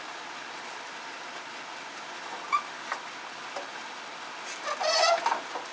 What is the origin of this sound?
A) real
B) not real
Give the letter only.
A